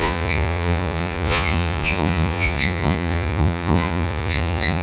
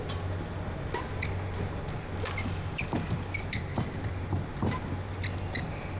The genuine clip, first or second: second